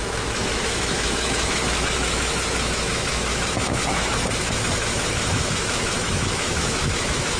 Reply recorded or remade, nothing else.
remade